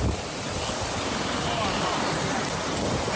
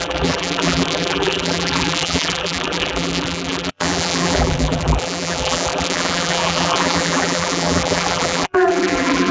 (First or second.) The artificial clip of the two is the second